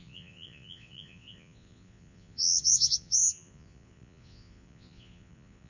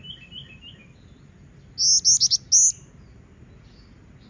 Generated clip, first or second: first